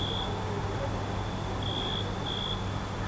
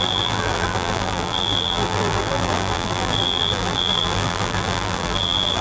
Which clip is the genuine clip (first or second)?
first